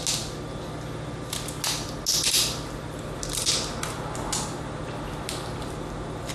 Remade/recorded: recorded